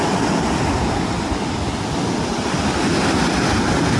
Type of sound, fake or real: real